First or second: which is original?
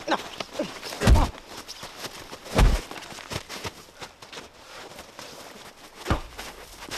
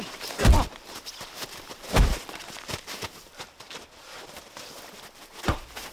first